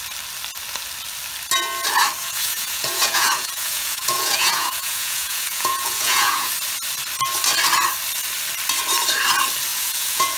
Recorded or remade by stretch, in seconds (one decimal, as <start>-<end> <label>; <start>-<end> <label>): 0.0-2.2 recorded; 2.2-6.5 remade; 6.5-9.7 recorded; 9.7-10.4 remade